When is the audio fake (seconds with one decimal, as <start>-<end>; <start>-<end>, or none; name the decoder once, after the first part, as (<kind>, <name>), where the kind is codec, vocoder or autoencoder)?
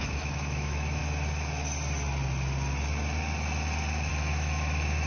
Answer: 0.0-1.0 (autoencoder, DAC-VAE); 4.1-5.1